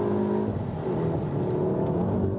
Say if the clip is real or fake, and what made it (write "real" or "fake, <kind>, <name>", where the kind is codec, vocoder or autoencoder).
real